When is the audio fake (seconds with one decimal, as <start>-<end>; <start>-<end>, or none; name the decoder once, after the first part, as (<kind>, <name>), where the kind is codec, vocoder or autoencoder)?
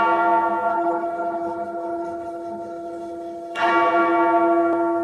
0.7-3.7 (codec, HILCodec)